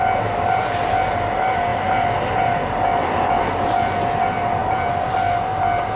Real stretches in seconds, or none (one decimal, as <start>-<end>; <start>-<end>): 0.0-6.0